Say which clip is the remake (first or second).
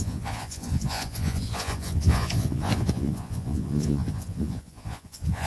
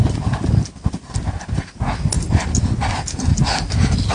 first